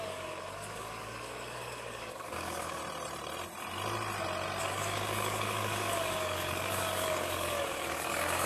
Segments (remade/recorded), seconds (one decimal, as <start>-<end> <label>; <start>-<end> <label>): 0.0-2.8 remade; 2.8-4.6 recorded; 4.6-8.5 remade